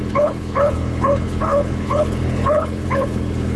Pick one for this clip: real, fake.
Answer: fake